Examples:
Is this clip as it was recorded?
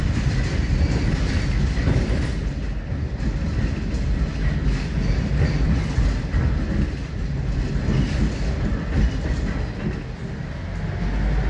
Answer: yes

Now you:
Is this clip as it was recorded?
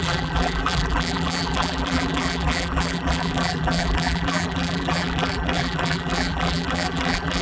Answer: no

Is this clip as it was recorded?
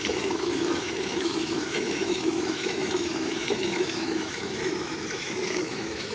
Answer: no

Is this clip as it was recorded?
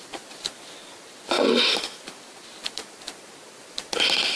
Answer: yes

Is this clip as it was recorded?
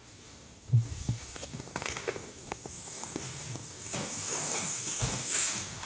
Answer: no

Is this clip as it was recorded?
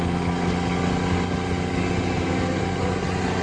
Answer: yes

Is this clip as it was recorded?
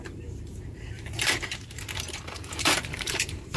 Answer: no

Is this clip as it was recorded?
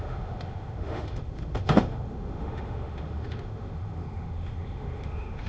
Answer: no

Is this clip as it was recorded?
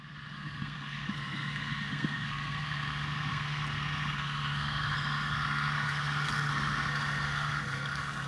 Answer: no